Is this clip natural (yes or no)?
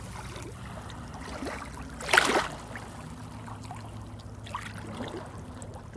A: yes